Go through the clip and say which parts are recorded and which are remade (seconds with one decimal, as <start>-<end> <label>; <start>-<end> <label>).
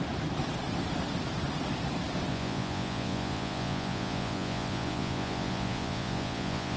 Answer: 0.0-2.3 recorded; 2.3-6.8 remade